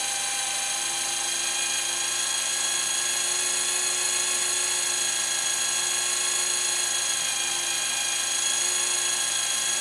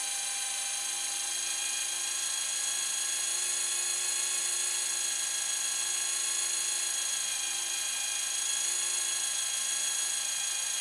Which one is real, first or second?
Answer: second